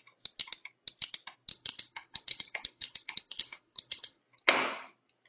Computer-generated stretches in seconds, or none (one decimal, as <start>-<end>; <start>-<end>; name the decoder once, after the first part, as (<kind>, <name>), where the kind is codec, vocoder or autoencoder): 1.5-4.2 (codec, HILCodec)